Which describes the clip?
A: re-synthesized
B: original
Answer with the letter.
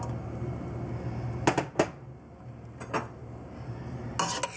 B